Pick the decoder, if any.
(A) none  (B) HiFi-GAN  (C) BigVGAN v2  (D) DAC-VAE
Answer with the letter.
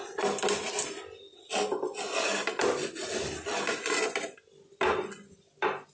A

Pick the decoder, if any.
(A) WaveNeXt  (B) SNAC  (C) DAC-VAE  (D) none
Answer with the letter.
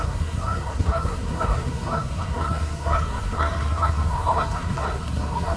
B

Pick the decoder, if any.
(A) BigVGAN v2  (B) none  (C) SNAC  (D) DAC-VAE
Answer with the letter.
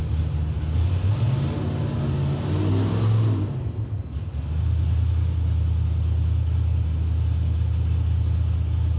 B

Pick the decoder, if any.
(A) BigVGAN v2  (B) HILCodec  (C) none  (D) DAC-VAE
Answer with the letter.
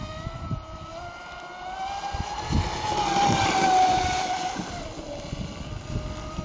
C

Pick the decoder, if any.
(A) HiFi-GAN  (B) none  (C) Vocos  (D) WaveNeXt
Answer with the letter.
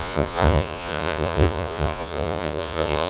C